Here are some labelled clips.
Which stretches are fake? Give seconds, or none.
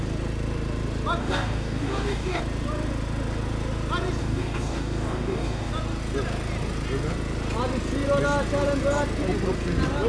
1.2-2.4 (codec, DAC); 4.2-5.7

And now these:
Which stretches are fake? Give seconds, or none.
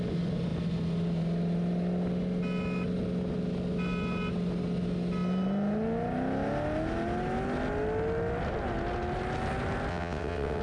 9.9-10.6 (vocoder, WaveNeXt)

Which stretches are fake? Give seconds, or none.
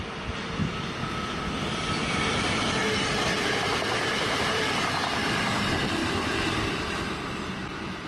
0.0-0.6 (vocoder, BigVGAN v2); 1.1-2.8; 3.5-8.1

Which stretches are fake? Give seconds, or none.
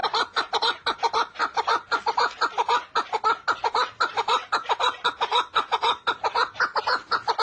none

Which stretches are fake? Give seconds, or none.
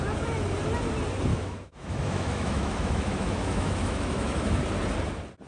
1.3-4.6 (autoencoder, DAC-VAE)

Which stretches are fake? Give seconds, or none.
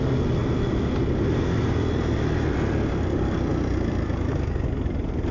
none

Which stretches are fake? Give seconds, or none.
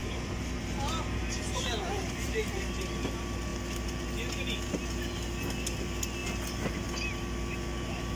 0.0-2.8 (vocoder, BigVGAN v2)